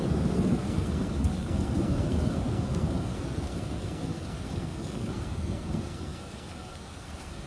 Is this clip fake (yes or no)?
yes